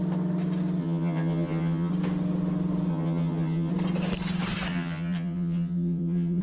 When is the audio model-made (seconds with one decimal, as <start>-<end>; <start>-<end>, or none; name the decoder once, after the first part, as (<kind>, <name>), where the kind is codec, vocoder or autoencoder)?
0.8-1.9 (vocoder, HiFi-GAN); 2.9-3.7; 4.7-6.4